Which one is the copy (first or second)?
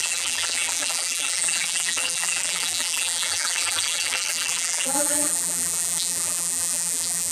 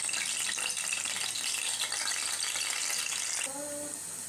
first